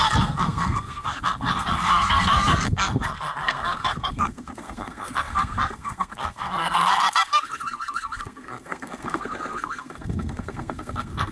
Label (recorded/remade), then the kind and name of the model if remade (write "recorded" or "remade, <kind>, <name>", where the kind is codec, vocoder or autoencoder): remade, codec, SNAC